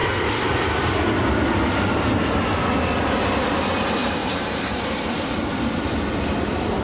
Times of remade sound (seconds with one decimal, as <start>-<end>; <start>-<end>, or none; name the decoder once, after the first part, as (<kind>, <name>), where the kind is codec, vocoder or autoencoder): 4.2-5.5 (vocoder, BigVGAN v2)